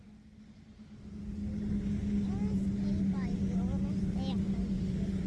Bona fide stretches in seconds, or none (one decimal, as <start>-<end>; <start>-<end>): 0.0-5.3